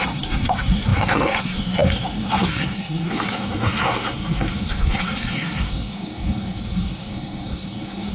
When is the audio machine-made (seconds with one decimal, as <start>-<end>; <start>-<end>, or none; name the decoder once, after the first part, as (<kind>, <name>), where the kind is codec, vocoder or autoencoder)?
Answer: 0.0-8.1 (codec, SNAC)